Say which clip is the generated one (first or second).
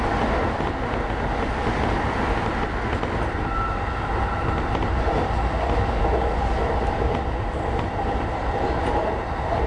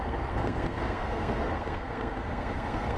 second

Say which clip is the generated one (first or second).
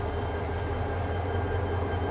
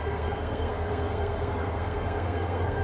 second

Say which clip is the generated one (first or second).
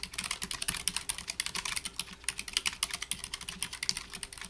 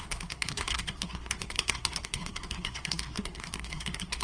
second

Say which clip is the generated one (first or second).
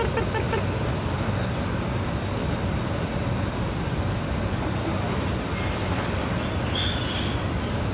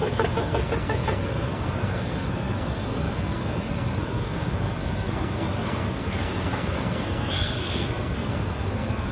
second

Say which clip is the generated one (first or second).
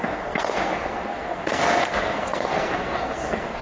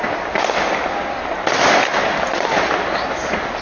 first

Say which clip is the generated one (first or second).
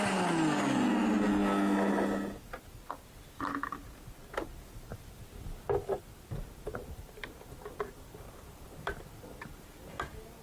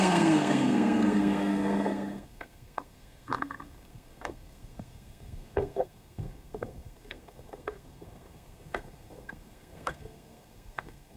second